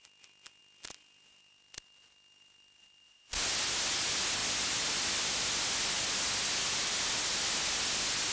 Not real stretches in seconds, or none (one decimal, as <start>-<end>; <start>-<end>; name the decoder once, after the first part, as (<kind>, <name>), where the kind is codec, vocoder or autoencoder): none